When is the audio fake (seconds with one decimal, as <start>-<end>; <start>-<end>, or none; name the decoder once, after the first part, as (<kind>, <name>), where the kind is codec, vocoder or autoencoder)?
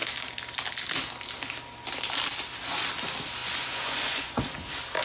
3.4-4.4 (vocoder, Vocos)